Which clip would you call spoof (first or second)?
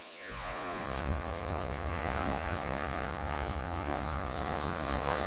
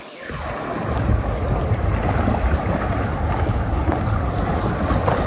first